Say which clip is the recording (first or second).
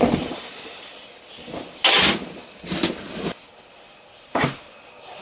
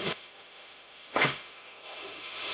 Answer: first